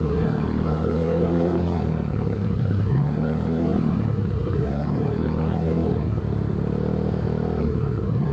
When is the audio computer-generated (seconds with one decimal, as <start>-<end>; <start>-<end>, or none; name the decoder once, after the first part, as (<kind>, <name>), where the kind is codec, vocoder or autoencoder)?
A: 0.0-6.2 (codec, SNAC); 7.6-8.3